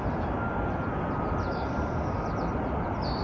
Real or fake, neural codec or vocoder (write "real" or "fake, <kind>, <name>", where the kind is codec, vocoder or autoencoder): real